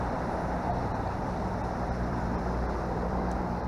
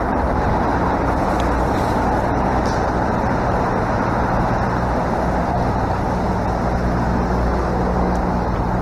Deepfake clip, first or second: first